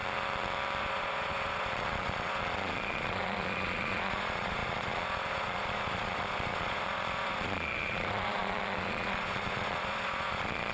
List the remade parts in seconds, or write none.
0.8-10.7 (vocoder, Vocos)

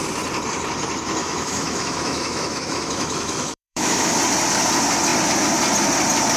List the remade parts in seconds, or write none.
1.2-4.1 (autoencoder, DAC-VAE)

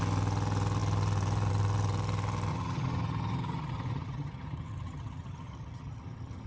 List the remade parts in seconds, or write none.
2.5-6.5 (vocoder, HiFi-GAN)

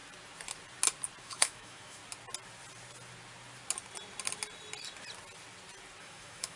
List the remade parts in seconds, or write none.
1.2-2.0 (autoencoder, DAC-VAE); 6.0-6.6